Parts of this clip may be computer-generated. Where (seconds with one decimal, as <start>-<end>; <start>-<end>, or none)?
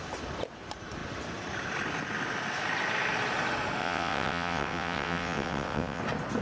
3.8-6.0